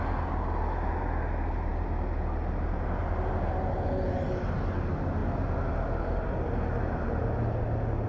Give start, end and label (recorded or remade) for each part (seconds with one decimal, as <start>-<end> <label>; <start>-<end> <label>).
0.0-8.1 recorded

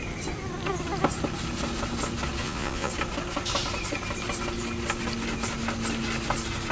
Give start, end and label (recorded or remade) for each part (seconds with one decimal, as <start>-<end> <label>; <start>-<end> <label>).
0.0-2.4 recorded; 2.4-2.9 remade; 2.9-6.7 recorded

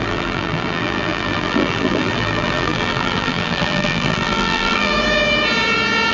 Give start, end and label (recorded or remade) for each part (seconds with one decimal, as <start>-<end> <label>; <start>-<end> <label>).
0.0-4.9 remade; 4.9-6.1 recorded

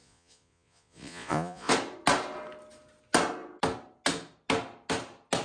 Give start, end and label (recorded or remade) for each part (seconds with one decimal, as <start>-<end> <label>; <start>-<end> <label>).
0.0-1.7 remade; 1.7-5.4 recorded

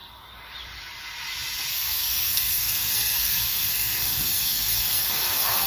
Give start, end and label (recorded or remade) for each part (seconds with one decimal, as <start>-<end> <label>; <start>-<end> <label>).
0.0-1.7 recorded; 1.7-5.7 remade

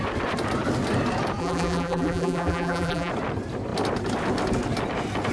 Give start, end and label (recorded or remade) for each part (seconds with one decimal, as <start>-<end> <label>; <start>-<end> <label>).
0.0-1.4 recorded; 1.4-3.1 remade; 3.1-5.3 recorded